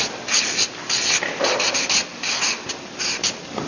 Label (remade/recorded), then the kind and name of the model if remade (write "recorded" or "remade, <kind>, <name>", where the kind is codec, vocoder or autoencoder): recorded